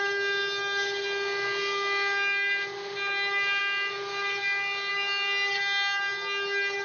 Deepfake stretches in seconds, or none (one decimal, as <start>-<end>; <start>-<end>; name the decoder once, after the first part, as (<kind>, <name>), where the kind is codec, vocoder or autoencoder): none